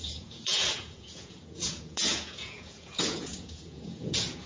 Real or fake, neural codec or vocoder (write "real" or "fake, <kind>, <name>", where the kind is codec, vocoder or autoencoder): fake, vocoder, Vocos